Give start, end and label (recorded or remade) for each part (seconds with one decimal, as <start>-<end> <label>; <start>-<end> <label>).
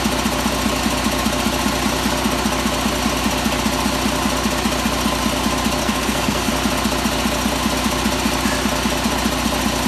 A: 0.0-5.8 recorded; 5.8-6.5 remade; 6.5-9.9 recorded